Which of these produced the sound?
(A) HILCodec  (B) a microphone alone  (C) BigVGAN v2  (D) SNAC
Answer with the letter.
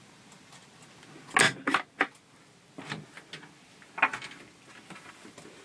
B